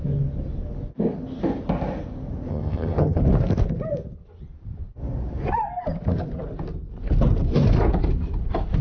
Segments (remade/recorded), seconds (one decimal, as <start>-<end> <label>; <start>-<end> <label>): 0.0-2.5 recorded; 2.5-3.2 remade; 3.2-8.8 recorded